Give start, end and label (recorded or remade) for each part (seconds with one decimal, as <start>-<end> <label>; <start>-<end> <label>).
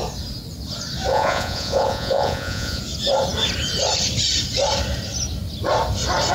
0.0-1.1 recorded; 1.1-2.8 remade; 2.8-6.3 recorded